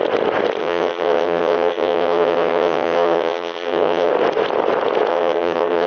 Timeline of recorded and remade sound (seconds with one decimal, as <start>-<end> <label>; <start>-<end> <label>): 0.0-0.6 recorded; 0.6-4.1 remade; 4.1-5.1 recorded; 5.1-5.9 remade

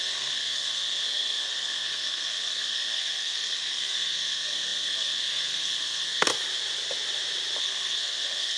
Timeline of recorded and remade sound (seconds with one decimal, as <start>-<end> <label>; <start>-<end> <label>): 0.0-6.3 remade; 6.3-7.6 recorded; 7.6-8.6 remade